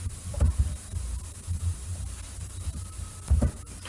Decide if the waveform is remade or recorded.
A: remade